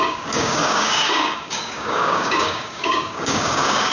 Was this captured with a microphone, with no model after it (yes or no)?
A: no